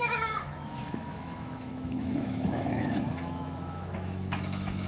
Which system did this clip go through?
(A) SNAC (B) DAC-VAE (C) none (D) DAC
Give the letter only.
B